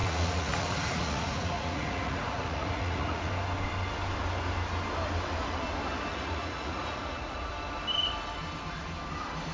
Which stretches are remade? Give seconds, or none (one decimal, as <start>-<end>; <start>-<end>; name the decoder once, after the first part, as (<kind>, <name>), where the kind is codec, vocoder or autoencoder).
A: 0.0-3.3 (vocoder, Vocos); 6.1-7.5